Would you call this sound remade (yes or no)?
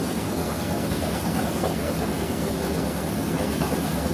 yes